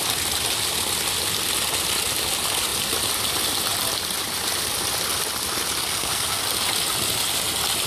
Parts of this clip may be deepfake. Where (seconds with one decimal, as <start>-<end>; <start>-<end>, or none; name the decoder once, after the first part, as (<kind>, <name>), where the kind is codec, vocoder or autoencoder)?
5.8-6.4 (codec, SNAC)